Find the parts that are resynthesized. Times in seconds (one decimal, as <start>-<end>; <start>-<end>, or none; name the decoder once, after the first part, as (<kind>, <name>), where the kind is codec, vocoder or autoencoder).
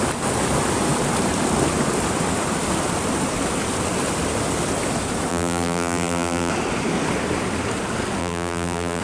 5.3-6.5 (vocoder, BigVGAN v2); 8.2-9.0